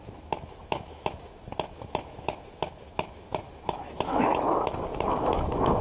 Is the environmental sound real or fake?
fake